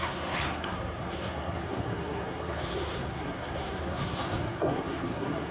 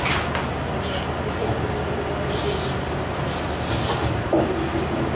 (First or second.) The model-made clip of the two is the first